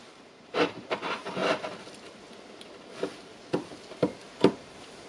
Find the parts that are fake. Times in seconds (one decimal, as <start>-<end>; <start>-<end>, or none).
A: 0.0-1.4; 4.5-5.1